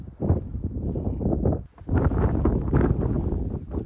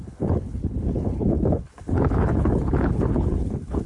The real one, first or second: first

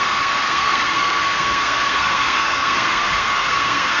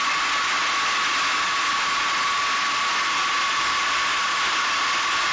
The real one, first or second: second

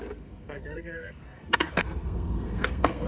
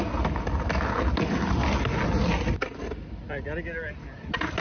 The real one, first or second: second